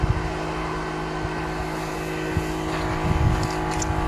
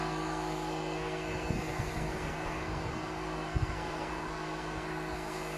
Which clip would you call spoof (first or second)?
second